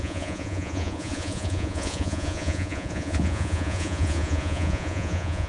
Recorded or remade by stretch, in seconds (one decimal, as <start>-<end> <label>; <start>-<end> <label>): 0.0-5.5 remade